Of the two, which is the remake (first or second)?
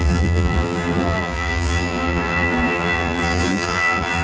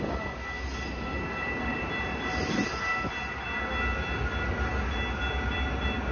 first